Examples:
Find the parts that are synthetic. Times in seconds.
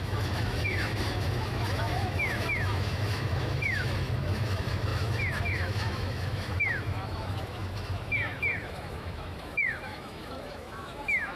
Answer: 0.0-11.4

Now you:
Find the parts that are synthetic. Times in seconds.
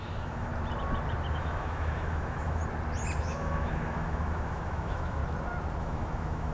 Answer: 0.0-0.5; 1.3-2.6; 3.2-5.2; 5.8-6.5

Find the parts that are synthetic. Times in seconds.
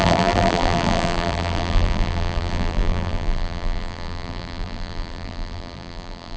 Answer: 0.0-6.4